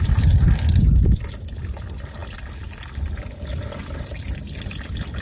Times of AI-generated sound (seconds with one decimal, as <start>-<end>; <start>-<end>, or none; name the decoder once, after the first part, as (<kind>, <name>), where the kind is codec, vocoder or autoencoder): none